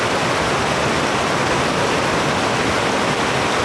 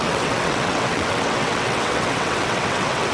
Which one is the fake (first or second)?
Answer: second